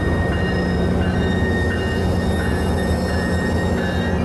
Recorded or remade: recorded